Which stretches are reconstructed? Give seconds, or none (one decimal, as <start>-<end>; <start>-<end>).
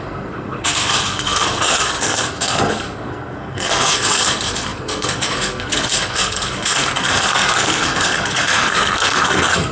0.0-9.7